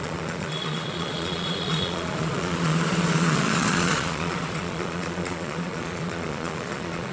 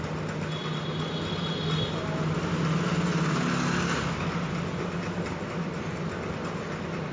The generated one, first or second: first